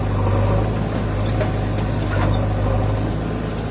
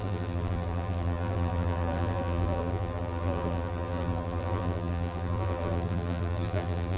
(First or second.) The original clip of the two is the first